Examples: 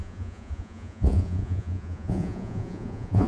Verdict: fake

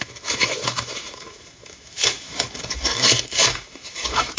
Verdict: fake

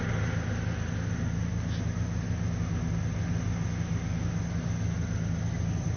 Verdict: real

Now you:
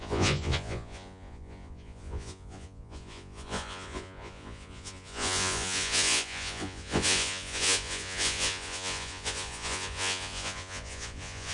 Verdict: fake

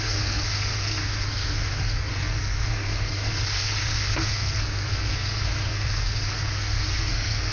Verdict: fake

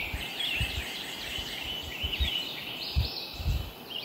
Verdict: real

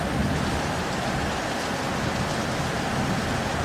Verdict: real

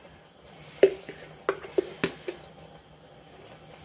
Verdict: real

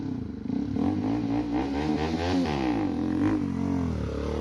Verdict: real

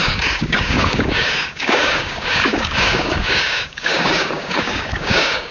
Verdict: fake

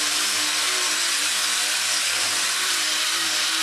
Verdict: fake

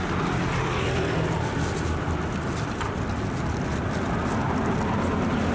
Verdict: real